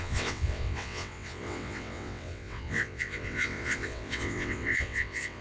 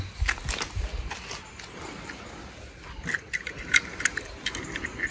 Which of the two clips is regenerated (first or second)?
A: first